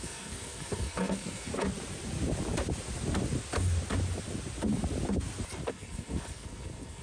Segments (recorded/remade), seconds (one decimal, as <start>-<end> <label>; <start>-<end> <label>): 0.0-1.5 remade; 1.5-5.7 recorded; 5.7-7.0 remade